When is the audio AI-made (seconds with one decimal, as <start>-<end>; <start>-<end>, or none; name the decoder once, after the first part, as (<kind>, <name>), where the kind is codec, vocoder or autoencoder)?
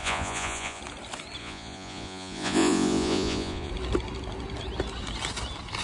0.0-0.8 (vocoder, Vocos); 1.4-3.7